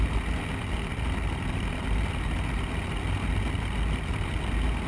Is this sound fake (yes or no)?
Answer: no